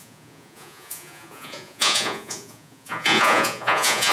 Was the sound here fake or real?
fake